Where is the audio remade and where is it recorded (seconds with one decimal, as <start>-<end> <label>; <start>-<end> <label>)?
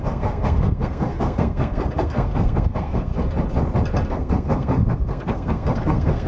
0.0-3.1 remade; 3.1-4.1 recorded; 4.1-6.3 remade